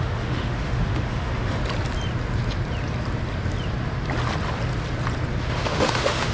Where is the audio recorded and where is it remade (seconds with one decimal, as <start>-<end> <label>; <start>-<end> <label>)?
0.0-1.6 remade; 1.6-5.4 recorded; 5.4-6.3 remade